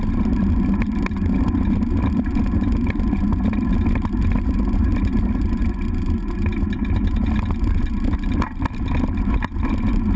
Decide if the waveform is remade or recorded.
recorded